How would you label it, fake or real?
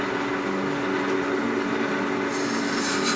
real